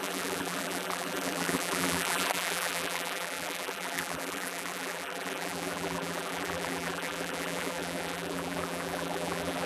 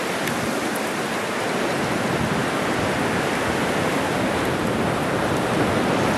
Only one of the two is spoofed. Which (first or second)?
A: first